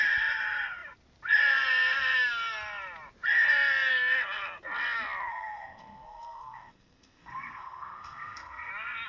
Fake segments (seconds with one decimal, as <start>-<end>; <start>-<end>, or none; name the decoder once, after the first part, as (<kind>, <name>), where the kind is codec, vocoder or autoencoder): 5.3-8.7 (codec, SNAC)